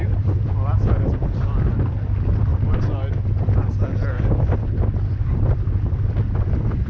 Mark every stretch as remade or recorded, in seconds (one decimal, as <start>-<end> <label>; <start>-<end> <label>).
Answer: 0.0-2.5 remade; 2.5-4.3 recorded; 4.3-6.9 remade